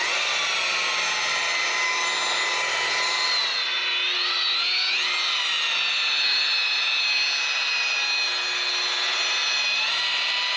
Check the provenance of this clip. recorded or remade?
recorded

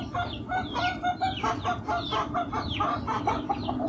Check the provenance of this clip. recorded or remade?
remade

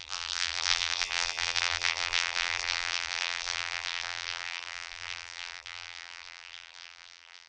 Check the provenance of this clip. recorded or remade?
remade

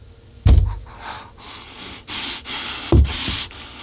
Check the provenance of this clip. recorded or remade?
recorded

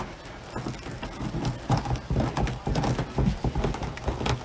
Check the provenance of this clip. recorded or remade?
recorded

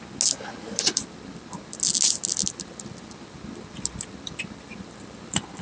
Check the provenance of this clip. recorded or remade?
recorded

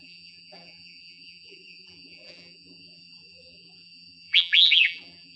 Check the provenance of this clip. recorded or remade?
remade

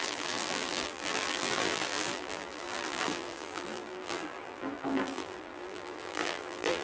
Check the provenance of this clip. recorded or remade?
remade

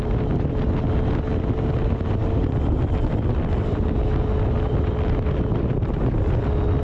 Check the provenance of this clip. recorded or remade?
recorded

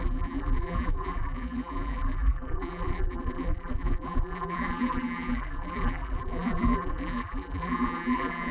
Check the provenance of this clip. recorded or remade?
remade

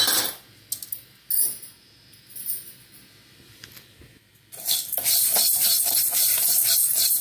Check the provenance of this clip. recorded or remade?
recorded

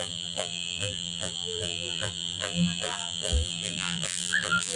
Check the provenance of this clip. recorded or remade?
remade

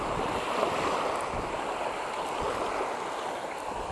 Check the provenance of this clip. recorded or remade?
recorded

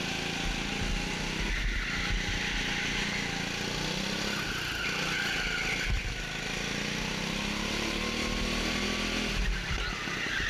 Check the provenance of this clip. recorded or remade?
recorded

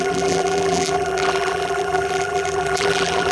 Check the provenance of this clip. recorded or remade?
remade